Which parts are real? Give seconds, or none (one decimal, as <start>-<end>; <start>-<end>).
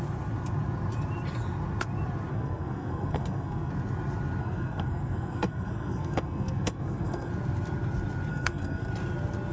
0.0-2.3; 3.7-4.4; 7.3-8.3; 8.9-9.5